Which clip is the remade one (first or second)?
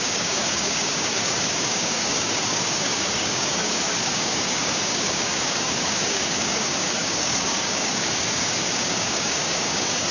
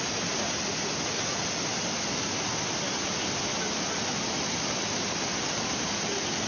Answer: first